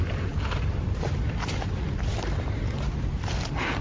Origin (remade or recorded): recorded